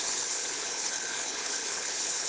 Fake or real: fake